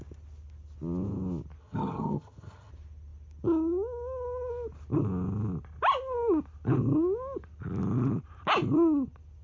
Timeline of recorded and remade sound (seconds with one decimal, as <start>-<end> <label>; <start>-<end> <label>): 0.0-1.6 recorded; 1.6-2.7 remade; 2.7-9.4 recorded